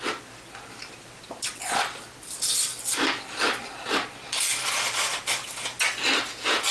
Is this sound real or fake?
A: real